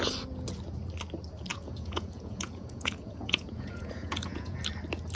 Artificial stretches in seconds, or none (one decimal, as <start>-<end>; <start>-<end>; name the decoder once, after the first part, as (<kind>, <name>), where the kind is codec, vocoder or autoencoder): 1.5-4.6 (vocoder, Vocos)